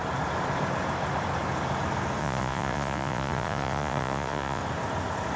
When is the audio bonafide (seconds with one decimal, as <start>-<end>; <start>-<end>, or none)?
0.0-2.2; 4.6-5.4